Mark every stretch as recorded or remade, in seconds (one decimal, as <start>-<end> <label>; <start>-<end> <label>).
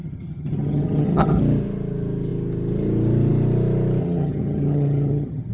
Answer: 0.0-1.4 remade; 1.4-4.0 recorded; 4.0-5.5 remade